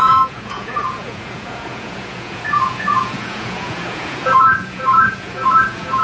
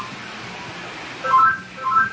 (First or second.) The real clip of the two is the second